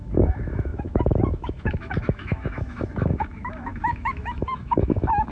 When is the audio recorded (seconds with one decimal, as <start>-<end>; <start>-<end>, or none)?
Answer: none